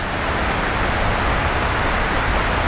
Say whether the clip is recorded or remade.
recorded